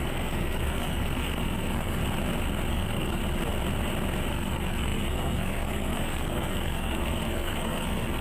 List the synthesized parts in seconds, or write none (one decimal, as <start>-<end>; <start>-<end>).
0.0-2.0; 2.7-3.2; 4.3-8.2